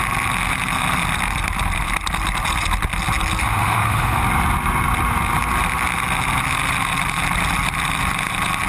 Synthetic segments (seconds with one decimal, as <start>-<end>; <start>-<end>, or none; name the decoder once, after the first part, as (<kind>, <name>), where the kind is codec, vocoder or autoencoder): 3.4-4.2 (autoencoder, DAC-VAE)